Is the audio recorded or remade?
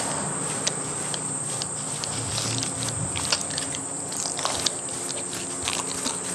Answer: recorded